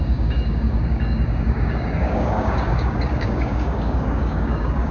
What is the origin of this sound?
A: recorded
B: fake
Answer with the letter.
B